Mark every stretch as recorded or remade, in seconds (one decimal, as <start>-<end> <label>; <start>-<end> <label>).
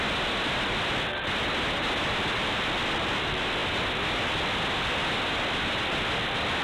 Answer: 0.0-6.6 recorded